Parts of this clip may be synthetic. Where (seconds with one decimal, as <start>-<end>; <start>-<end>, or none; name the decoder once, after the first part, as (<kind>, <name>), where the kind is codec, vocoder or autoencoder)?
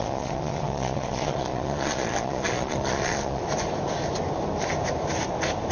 0.0-3.4 (vocoder, Vocos)